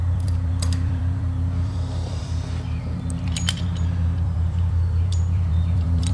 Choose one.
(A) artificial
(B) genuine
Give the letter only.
A